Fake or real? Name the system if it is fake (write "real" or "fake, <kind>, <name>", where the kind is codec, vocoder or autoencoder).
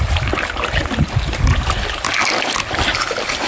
real